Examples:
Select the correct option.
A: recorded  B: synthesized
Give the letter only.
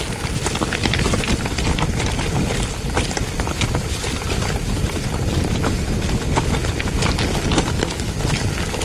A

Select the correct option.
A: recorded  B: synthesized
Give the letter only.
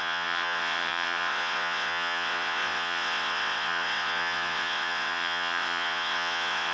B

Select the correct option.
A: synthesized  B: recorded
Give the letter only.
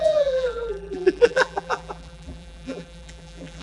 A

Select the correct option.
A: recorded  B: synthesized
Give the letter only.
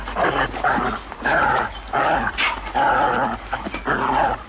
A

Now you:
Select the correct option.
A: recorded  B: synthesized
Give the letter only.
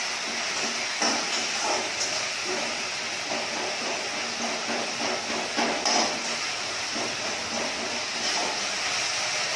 A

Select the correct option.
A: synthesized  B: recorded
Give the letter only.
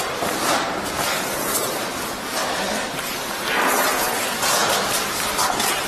B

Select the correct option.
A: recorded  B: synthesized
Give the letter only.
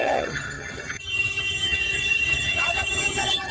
B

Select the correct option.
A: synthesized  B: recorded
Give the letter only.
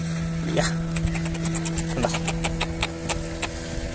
B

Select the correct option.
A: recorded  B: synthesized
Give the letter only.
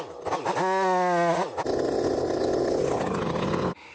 A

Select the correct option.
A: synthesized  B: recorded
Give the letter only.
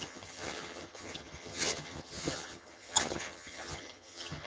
A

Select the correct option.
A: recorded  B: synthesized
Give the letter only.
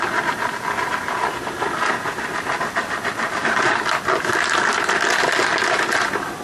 A